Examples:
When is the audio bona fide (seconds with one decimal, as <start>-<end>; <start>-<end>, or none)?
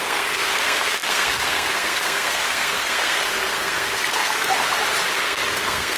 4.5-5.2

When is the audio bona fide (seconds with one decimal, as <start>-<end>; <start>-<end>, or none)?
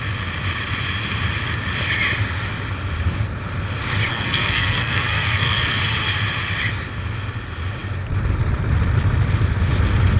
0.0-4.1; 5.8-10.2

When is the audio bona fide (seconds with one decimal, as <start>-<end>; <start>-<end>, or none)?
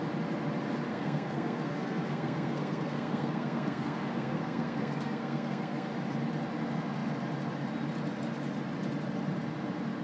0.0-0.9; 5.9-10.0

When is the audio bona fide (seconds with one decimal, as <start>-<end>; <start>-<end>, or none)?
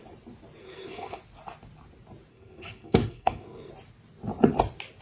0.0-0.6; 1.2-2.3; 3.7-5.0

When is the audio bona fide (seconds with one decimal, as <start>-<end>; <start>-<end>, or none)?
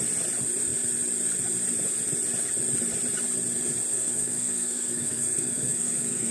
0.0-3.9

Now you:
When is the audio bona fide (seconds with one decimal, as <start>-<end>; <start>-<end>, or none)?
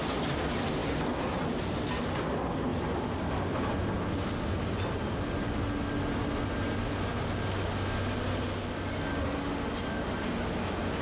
0.0-11.0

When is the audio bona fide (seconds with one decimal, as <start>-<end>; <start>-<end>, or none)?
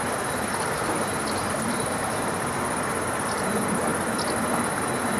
0.0-5.2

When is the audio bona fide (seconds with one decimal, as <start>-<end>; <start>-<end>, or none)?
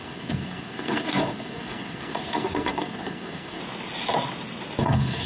3.6-4.8